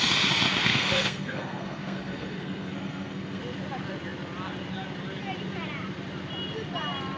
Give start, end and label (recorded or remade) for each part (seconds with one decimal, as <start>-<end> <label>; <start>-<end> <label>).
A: 0.0-0.7 recorded; 0.7-3.4 remade; 3.4-7.2 recorded